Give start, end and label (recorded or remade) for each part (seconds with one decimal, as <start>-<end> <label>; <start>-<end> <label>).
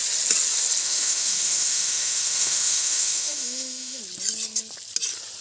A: 0.0-0.8 recorded; 0.8-4.0 remade; 4.0-5.4 recorded